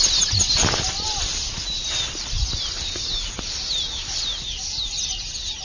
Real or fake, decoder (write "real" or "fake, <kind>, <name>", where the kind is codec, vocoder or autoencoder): real